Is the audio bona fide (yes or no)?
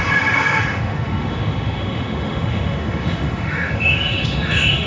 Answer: no